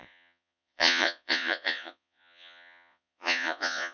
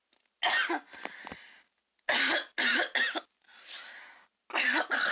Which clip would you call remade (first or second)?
first